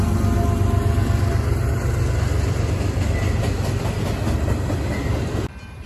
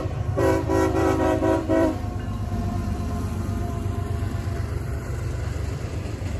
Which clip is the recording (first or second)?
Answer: first